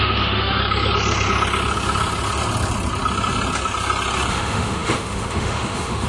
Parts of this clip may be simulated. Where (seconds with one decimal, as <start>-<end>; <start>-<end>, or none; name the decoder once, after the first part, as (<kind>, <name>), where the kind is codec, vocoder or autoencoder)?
0.0-0.6 (autoencoder, DAC-VAE); 4.3-6.1